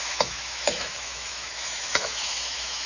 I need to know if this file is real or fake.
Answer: fake